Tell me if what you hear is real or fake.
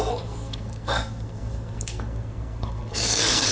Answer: fake